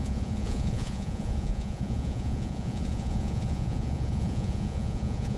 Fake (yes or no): yes